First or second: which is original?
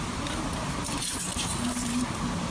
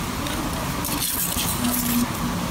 second